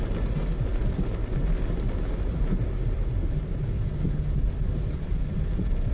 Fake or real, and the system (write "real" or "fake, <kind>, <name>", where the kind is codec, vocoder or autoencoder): real